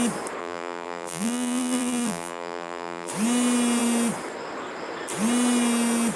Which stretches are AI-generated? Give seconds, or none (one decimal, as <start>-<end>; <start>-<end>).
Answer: 0.4-3.1